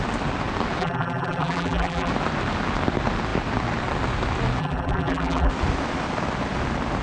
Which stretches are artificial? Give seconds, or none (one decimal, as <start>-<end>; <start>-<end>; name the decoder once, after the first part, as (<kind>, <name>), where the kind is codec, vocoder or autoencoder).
0.8-2.1 (vocoder, BigVGAN v2); 4.6-5.5